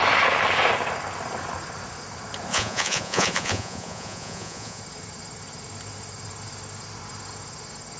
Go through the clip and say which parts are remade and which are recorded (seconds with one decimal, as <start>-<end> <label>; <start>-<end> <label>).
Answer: 0.0-2.5 recorded; 2.5-4.8 remade; 4.8-8.0 recorded